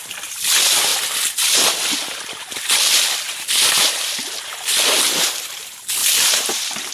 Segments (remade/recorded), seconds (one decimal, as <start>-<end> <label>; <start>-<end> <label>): 0.0-6.0 recorded; 6.0-6.9 remade